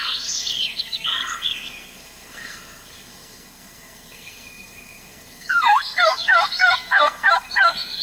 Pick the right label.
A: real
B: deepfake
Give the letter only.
B